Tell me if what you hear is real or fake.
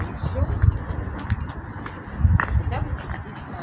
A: real